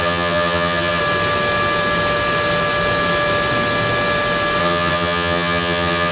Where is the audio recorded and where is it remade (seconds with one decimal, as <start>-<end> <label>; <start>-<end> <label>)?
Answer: 0.0-1.0 remade; 1.0-4.6 recorded; 4.6-6.1 remade